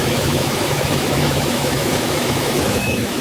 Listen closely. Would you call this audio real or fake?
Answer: fake